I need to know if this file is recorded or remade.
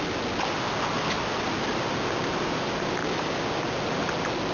recorded